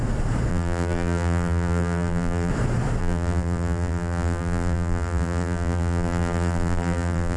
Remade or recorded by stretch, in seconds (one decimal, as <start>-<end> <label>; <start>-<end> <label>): 0.0-0.5 recorded; 0.5-2.5 remade; 2.5-3.0 recorded; 3.0-7.4 remade